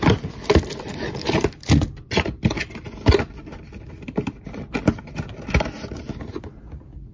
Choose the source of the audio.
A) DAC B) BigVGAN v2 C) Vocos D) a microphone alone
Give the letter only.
D